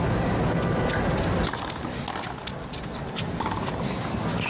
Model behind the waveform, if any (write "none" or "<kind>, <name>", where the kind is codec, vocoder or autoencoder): none